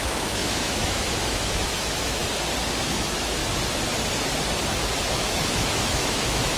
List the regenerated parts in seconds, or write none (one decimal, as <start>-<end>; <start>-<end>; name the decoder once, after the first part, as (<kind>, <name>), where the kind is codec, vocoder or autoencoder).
0.0-2.2 (autoencoder, DAC-VAE); 2.9-3.4; 5.1-6.6